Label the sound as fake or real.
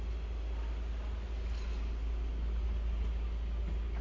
real